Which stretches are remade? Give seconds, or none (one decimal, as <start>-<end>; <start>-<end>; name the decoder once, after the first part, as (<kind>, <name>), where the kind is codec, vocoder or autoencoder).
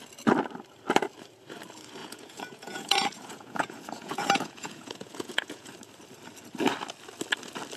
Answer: 2.0-5.7 (vocoder, Vocos)